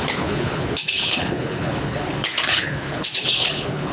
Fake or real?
fake